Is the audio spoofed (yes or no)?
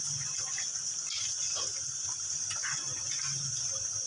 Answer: no